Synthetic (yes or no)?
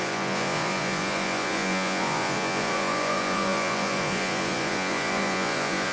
yes